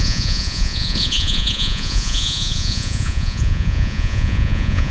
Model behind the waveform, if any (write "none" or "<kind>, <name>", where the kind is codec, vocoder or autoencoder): vocoder, Vocos